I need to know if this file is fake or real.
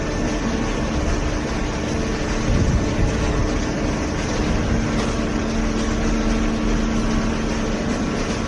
real